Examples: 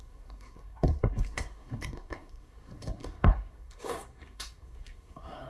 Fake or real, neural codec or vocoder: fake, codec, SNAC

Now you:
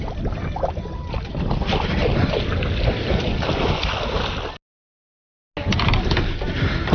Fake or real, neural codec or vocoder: real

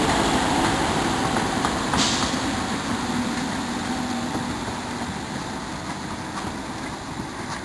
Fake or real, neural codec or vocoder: real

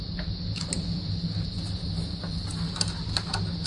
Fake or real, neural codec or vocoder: real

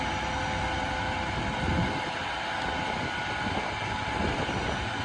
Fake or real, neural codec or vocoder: real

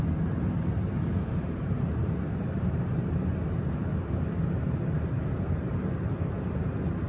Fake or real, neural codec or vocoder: fake, vocoder, BigVGAN v2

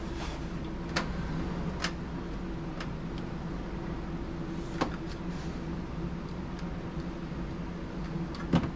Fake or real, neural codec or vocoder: real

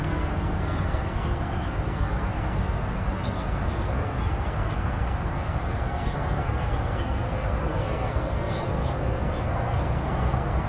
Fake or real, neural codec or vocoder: fake, codec, SNAC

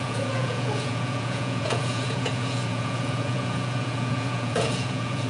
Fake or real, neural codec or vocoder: fake, vocoder, Vocos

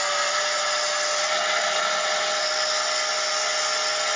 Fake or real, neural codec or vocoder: real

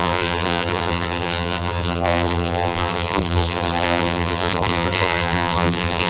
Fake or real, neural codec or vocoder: fake, vocoder, BigVGAN v2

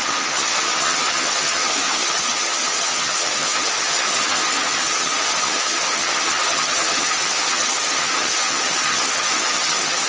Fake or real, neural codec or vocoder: fake, vocoder, HiFi-GAN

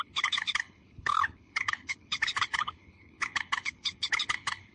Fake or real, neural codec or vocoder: fake, codec, HILCodec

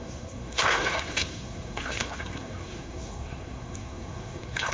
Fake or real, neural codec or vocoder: fake, codec, SNAC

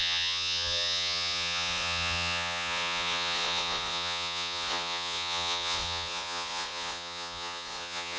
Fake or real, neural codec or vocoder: fake, vocoder, Vocos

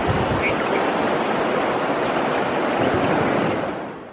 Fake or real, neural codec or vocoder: real